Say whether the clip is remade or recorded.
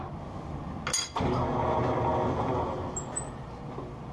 recorded